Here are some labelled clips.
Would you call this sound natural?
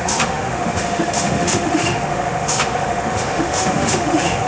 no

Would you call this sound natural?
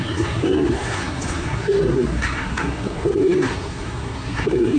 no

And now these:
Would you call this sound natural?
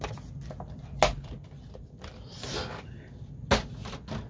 yes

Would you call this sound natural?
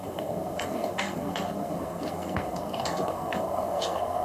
no